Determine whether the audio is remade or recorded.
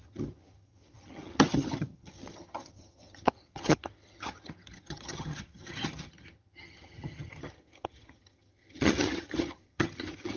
remade